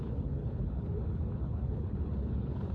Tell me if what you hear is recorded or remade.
remade